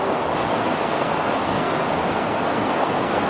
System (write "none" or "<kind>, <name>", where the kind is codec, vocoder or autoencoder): codec, SNAC